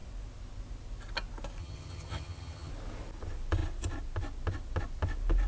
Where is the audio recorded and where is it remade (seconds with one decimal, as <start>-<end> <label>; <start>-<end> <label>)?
0.0-1.6 recorded; 1.6-2.7 remade; 2.7-5.5 recorded